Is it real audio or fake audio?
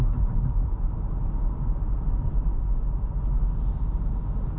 real